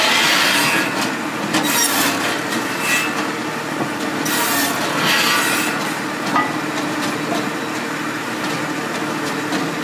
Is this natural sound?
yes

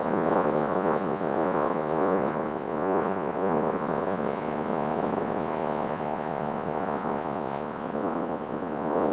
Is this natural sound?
no